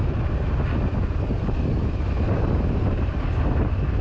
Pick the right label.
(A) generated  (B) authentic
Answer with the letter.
B